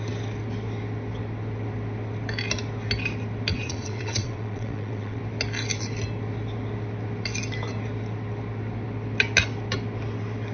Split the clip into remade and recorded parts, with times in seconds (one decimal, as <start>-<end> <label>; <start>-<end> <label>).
0.0-3.5 recorded; 3.5-5.2 remade; 5.2-10.5 recorded

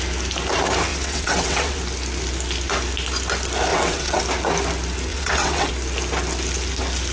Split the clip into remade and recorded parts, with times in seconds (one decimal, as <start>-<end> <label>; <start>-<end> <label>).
0.0-0.9 recorded; 0.9-1.8 remade; 1.8-3.7 recorded; 3.7-4.2 remade; 4.2-5.1 recorded; 5.1-5.7 remade; 5.7-7.1 recorded

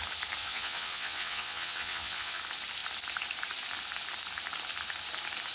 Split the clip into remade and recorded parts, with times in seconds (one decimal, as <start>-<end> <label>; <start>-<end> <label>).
0.0-0.4 recorded; 0.4-2.4 remade; 2.4-5.5 recorded

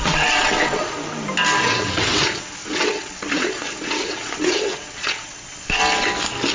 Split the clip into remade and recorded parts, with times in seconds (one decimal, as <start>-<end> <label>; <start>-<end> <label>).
0.0-0.8 remade; 0.8-1.6 recorded; 1.6-5.8 remade; 5.8-6.5 recorded

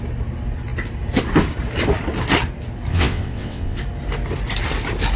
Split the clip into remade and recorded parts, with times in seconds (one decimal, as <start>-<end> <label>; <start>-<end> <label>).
0.0-2.9 recorded; 2.9-3.8 remade; 3.8-5.2 recorded

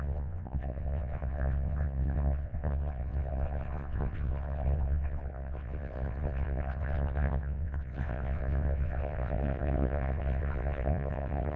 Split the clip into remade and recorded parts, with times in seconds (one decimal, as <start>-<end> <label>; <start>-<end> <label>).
0.0-11.6 remade

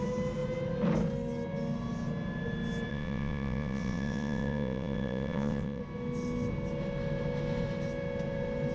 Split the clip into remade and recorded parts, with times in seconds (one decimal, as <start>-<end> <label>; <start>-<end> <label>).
0.0-2.9 recorded; 2.9-5.8 remade; 5.8-8.7 recorded